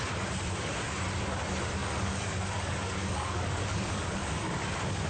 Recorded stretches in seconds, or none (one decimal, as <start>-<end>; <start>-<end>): 0.0-1.8